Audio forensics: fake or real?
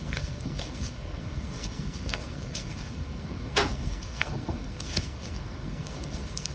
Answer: fake